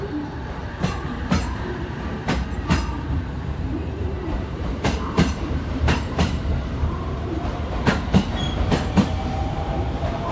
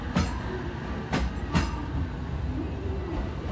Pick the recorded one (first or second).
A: second